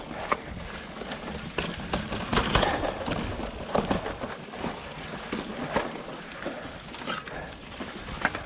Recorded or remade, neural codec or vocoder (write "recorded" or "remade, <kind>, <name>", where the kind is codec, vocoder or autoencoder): recorded